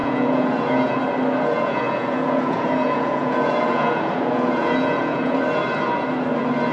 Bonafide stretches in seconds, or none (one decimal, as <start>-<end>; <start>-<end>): 1.0-1.5; 5.4-6.7